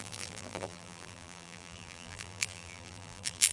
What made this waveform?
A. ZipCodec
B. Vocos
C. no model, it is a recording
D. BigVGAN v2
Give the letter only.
D